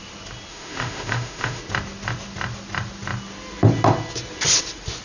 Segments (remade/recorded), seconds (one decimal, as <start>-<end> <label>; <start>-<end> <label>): 0.0-0.5 recorded; 0.5-1.6 remade; 1.6-5.0 recorded